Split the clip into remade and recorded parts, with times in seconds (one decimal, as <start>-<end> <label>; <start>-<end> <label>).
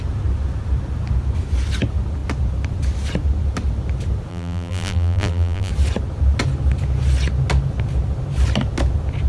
0.0-4.3 recorded; 4.3-5.7 remade; 5.7-9.3 recorded